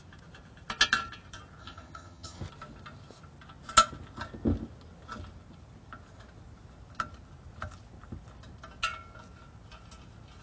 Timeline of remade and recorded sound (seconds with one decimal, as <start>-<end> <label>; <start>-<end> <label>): 0.0-1.6 recorded; 1.6-2.4 remade; 2.4-10.4 recorded